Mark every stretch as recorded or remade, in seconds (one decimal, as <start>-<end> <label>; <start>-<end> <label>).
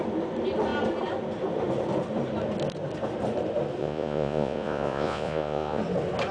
0.0-3.8 recorded; 3.8-5.8 remade; 5.8-6.3 recorded